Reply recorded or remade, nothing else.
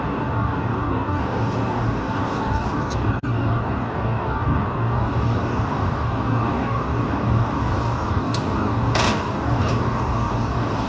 remade